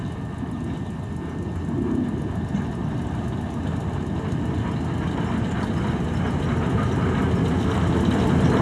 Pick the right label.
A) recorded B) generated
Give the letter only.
A